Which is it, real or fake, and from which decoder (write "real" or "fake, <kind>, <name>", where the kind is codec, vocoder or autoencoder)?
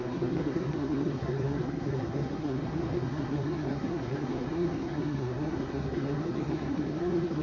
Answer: fake, codec, SNAC